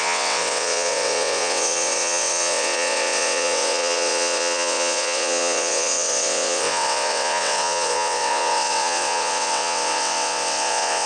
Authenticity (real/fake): fake